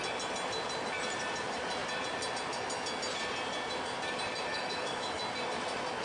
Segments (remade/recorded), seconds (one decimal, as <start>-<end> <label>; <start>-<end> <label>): 0.0-4.5 recorded; 4.5-5.2 remade; 5.2-6.0 recorded